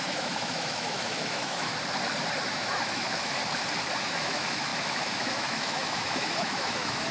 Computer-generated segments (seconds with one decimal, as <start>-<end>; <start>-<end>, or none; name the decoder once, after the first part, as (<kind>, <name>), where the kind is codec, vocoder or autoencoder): 0.0-1.7 (autoencoder, DAC-VAE); 2.5-3.4; 4.0-7.1